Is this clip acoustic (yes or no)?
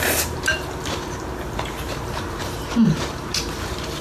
no